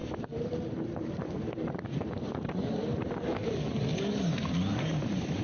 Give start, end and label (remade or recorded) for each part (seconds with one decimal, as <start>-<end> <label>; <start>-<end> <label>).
0.0-3.1 remade; 3.1-5.4 recorded